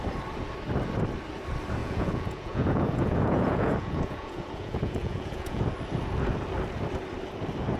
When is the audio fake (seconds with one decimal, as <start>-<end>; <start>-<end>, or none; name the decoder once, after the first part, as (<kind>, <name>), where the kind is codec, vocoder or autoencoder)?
1.8-5.6 (vocoder, Vocos)